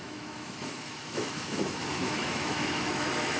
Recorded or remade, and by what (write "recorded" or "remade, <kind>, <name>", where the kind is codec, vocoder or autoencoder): remade, autoencoder, DAC-VAE